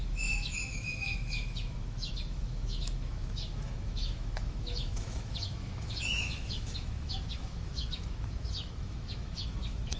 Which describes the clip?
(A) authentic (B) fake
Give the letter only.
B